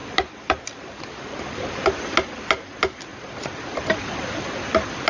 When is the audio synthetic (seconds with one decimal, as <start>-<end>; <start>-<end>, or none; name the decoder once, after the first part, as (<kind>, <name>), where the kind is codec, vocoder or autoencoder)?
0.0-2.0 (vocoder, BigVGAN v2); 3.1-4.3